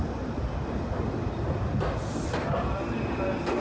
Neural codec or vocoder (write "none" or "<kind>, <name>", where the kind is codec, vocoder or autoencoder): none